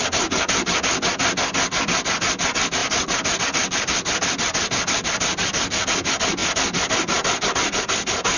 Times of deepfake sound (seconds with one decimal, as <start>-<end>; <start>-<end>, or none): none